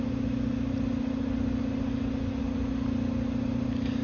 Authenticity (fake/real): real